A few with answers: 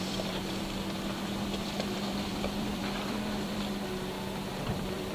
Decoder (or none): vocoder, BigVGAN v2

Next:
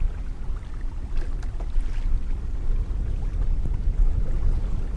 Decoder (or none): none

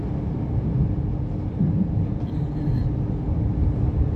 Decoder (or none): vocoder, BigVGAN v2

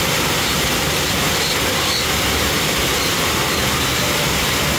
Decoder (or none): none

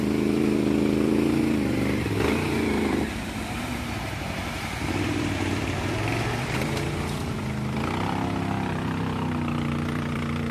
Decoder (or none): vocoder, BigVGAN v2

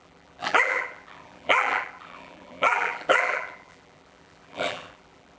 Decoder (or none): vocoder, BigVGAN v2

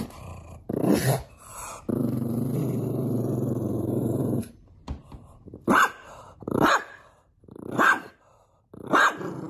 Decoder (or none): vocoder, BigVGAN v2